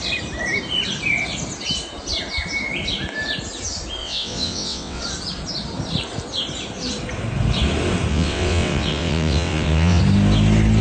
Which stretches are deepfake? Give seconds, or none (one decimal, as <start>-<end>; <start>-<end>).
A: 4.0-5.0; 8.1-10.0